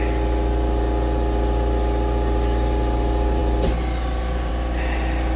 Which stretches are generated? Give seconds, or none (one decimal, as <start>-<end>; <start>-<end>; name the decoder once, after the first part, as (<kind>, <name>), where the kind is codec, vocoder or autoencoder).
none